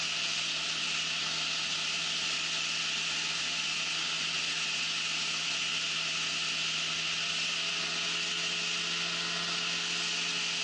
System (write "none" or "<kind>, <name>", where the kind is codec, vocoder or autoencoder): none